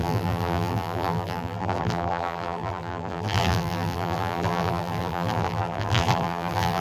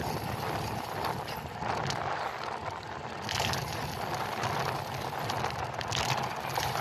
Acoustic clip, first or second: second